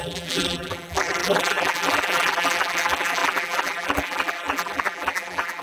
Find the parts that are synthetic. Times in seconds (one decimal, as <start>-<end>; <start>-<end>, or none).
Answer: 0.0-5.6